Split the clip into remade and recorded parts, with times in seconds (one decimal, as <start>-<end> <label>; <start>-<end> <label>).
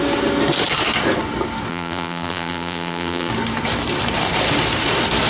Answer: 0.0-1.7 recorded; 1.7-3.3 remade; 3.3-5.3 recorded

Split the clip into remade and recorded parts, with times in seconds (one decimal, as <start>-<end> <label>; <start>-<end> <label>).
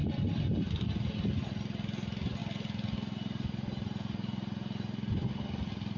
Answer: 0.0-6.0 recorded